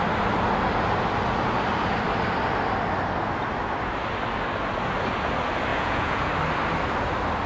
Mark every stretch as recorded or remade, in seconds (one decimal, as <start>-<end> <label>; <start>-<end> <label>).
0.0-5.7 recorded; 5.7-6.3 remade; 6.3-7.5 recorded